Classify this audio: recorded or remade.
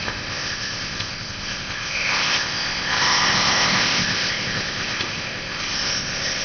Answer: remade